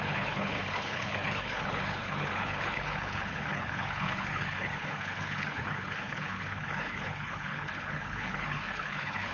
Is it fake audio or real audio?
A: fake